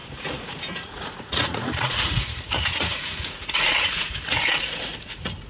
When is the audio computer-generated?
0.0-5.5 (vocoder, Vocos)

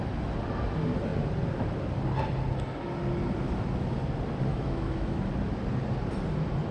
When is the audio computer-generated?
4.5-5.2 (autoencoder, DAC-VAE)

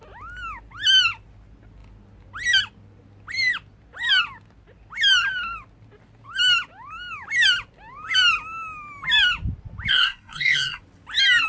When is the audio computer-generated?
9.9-10.8 (codec, SNAC)

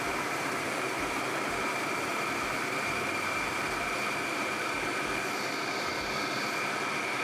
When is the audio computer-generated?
0.0-5.9 (vocoder, BigVGAN v2)

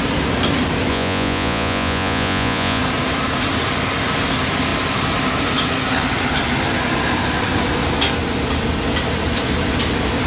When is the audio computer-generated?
0.9-2.8 (vocoder, Vocos)